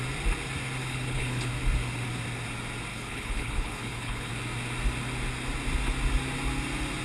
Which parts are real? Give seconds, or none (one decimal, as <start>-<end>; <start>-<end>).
0.0-0.8; 1.5-2.9; 4.3-7.0